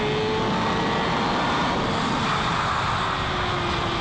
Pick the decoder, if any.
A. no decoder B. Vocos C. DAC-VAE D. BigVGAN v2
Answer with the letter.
A